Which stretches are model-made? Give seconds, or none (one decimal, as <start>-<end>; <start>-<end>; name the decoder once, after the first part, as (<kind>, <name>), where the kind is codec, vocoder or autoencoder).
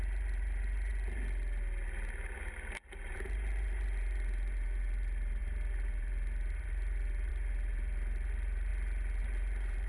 0.0-0.9 (vocoder, BigVGAN v2); 3.0-8.7; 9.2-9.9